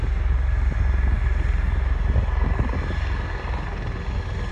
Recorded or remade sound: recorded